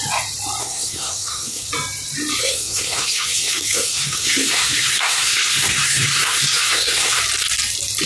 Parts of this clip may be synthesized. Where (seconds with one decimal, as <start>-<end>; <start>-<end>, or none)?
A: 0.6-1.7; 2.4-7.2